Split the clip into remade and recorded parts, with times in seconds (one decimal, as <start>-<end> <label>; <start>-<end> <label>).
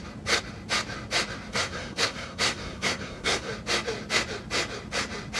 0.0-1.5 recorded; 1.5-3.5 remade; 3.5-5.4 recorded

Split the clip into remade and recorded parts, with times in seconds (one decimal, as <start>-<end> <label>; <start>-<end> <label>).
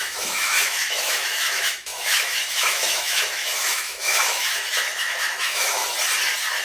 0.0-5.8 remade; 5.8-6.6 recorded